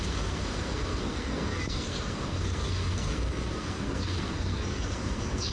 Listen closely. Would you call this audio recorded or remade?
remade